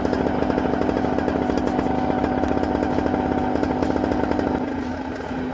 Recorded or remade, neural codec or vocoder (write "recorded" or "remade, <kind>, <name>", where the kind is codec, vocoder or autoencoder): recorded